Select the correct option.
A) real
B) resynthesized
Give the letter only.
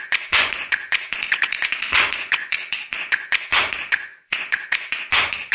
B